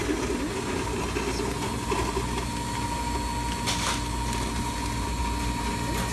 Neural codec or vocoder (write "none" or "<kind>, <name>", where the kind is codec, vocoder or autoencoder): none